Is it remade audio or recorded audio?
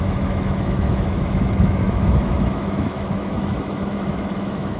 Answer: remade